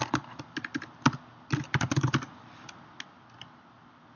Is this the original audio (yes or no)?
yes